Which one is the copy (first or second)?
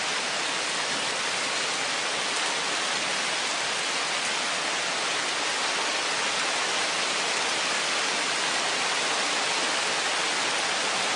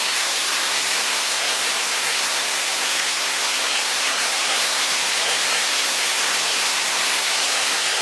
second